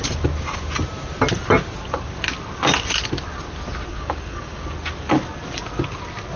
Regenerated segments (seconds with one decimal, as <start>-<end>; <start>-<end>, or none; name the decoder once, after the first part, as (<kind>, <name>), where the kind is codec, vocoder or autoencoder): 3.9-4.6 (codec, DAC)